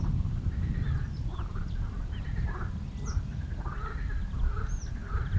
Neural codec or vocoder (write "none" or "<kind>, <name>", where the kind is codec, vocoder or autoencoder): vocoder, BigVGAN v2